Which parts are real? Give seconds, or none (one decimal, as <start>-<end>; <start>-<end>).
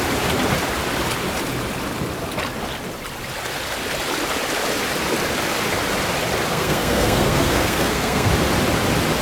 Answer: 0.0-6.5; 8.3-9.2